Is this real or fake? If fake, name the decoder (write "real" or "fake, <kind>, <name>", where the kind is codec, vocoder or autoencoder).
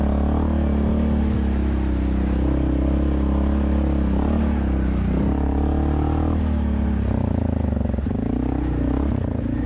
real